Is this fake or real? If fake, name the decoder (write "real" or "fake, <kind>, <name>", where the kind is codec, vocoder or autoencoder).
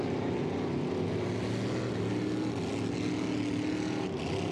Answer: real